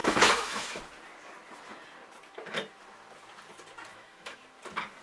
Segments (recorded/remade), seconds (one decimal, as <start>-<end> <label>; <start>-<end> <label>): 0.0-0.8 remade; 0.8-3.9 recorded; 3.9-4.4 remade; 4.4-5.0 recorded